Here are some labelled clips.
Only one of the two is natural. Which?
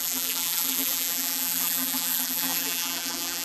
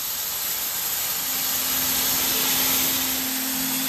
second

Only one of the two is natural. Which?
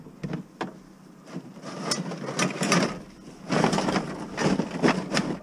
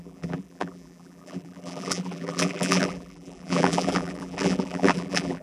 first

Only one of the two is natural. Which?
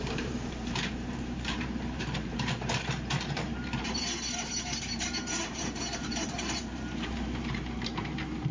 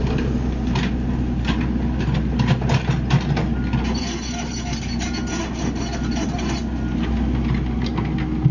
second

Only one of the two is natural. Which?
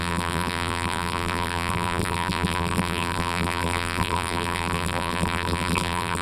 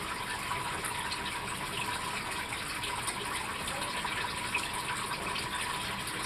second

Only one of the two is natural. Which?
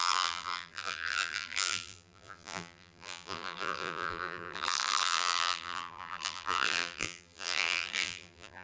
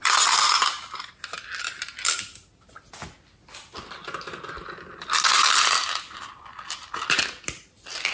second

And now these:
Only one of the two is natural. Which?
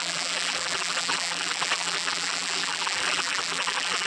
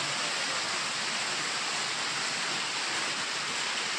second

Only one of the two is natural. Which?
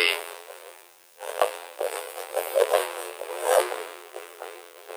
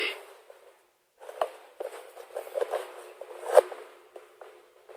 second